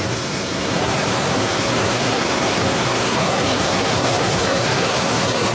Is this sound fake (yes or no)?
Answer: yes